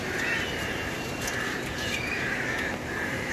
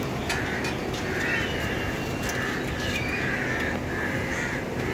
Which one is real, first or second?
second